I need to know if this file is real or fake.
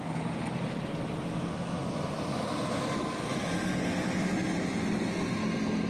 real